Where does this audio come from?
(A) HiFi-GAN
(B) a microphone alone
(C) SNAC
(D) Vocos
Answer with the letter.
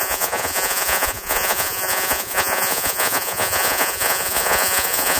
D